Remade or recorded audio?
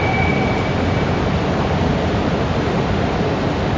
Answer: recorded